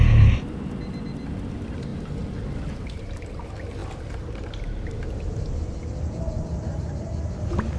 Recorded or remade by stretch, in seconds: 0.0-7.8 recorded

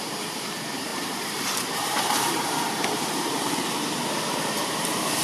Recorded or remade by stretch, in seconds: 0.0-5.2 remade

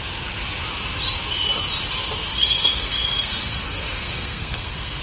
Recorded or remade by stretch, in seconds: 0.0-2.4 recorded; 2.4-5.0 remade

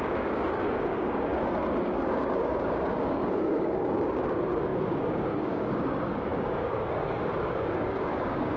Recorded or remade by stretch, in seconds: 0.0-8.6 remade

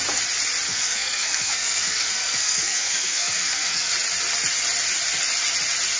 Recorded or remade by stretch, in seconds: 0.0-0.7 recorded; 0.7-3.9 remade; 3.9-6.0 recorded

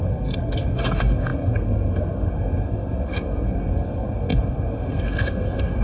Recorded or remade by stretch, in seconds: 0.0-5.8 remade